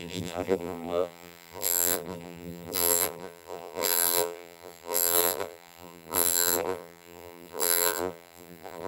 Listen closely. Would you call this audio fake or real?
fake